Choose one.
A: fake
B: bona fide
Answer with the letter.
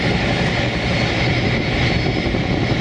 B